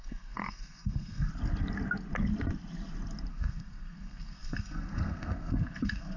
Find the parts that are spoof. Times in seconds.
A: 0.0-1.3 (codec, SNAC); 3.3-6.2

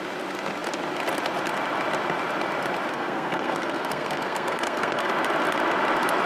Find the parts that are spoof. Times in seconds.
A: 2.9-5.1 (codec, SNAC)

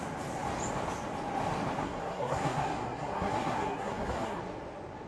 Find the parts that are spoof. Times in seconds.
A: 1.8-4.4 (codec, SNAC)

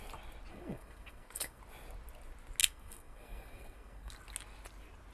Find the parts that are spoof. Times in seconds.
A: 0.5-1.6 (codec, SNAC); 2.6-4.1

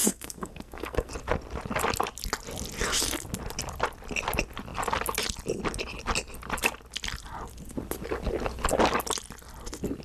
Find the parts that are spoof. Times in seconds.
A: 0.0-1.1 (codec, SNAC)

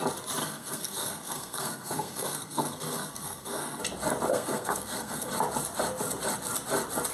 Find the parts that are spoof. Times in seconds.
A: 0.4-3.8 (codec, SNAC); 4.3-5.3

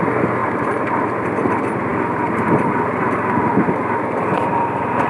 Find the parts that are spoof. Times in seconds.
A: none

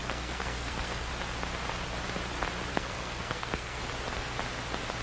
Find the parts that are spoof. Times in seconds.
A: 0.0-1.1 (codec, SNAC); 2.7-3.8